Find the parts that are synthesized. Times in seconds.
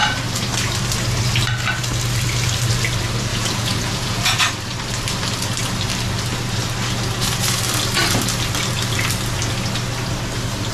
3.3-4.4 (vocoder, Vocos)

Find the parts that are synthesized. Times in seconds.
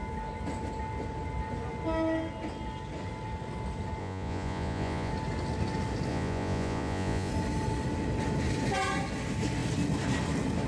4.0-5.1 (vocoder, Vocos); 6.1-7.3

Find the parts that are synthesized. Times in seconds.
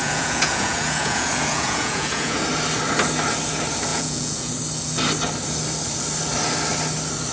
0.0-2.4 (vocoder, Vocos); 3.9-4.5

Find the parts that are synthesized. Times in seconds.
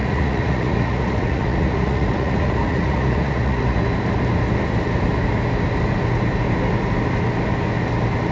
0.0-3.8 (vocoder, Vocos)